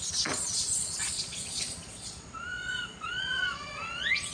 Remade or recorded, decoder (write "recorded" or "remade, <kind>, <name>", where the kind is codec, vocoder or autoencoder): remade, vocoder, Vocos